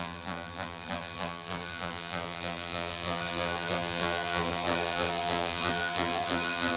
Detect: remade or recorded remade